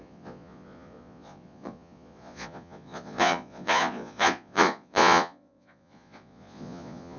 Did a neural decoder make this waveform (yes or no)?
yes